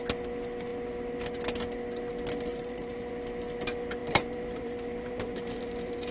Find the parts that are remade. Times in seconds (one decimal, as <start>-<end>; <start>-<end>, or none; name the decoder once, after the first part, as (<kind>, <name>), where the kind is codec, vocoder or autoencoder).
2.5-3.1 (vocoder, BigVGAN v2); 4.0-6.1